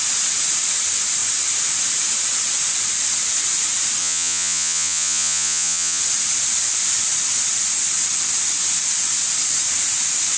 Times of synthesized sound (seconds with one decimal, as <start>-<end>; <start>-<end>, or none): 4.0-6.0